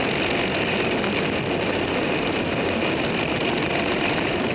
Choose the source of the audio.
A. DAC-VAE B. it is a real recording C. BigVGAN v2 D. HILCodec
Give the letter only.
B